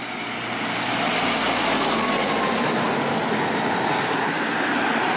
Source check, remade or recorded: recorded